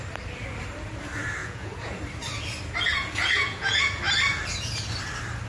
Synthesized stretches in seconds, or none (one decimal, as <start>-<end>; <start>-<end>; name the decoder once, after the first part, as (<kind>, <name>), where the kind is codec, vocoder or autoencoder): 1.4-2.0 (vocoder, Vocos); 2.9-4.0